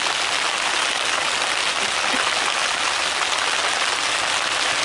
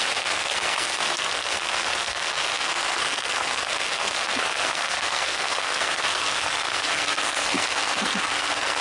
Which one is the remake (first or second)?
second